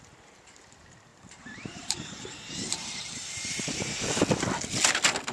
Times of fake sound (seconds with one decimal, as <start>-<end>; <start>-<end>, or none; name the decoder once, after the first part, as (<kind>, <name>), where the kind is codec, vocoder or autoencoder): 1.1-4.1 (vocoder, BigVGAN v2)